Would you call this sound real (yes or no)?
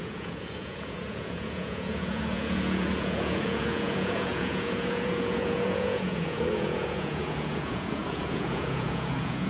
no